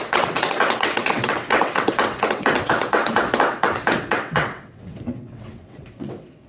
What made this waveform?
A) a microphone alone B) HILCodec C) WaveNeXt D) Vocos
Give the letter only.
C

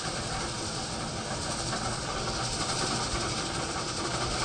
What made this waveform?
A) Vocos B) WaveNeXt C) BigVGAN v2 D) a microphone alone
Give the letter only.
D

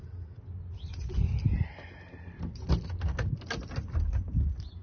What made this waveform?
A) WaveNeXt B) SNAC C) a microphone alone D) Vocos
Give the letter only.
C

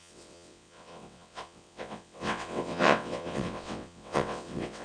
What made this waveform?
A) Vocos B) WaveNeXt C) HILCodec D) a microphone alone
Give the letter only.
B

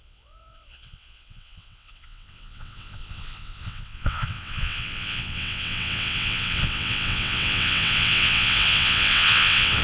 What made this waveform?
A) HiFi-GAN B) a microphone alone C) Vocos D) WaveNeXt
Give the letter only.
D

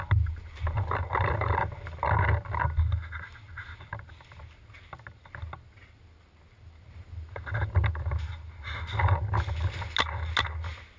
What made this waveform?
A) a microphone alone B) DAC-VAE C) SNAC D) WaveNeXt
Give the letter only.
A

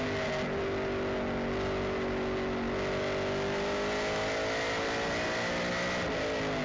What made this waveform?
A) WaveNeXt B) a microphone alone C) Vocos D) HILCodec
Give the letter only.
B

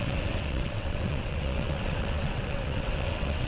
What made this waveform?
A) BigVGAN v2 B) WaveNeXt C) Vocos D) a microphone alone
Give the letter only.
B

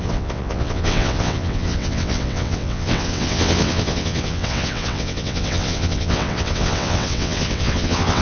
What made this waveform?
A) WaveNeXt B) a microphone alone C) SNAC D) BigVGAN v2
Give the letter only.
A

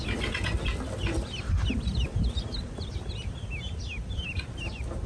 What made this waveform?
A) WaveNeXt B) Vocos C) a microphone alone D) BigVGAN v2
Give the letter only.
C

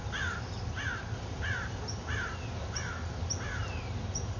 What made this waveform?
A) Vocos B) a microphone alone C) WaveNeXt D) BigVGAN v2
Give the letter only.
B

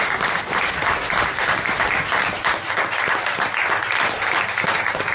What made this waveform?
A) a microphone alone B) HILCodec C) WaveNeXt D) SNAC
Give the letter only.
A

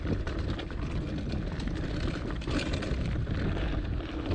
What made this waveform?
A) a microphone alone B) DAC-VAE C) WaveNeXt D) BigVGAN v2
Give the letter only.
A